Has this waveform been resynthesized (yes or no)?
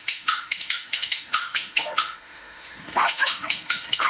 yes